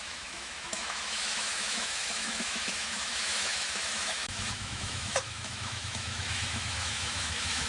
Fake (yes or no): yes